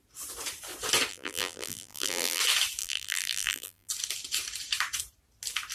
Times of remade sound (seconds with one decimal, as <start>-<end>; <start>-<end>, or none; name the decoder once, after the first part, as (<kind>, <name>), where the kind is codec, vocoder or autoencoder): 1.1-2.4 (vocoder, BigVGAN v2); 2.8-3.9